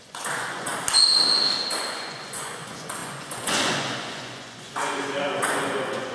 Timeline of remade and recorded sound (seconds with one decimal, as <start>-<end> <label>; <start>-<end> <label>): 0.0-0.7 remade; 0.7-1.7 recorded; 1.7-6.1 remade